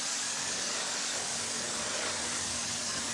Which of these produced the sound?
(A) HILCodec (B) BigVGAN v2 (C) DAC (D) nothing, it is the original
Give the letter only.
C